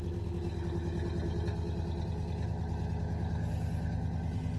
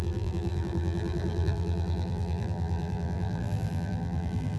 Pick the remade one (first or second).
second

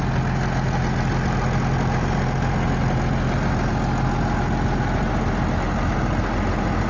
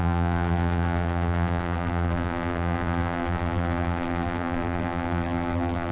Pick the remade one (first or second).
second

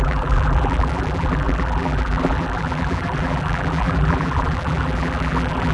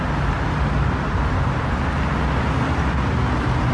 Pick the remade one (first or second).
first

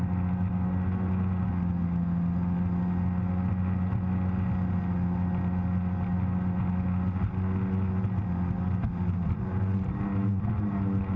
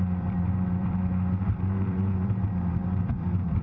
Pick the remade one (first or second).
second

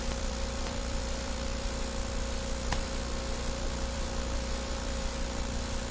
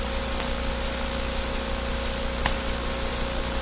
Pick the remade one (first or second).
first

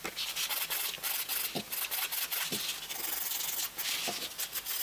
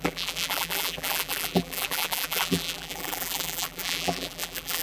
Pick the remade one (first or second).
second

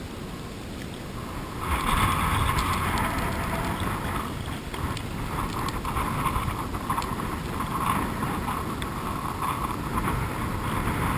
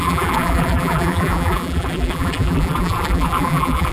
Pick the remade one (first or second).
second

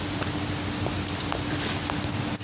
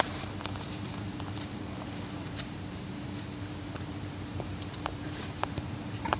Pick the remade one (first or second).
second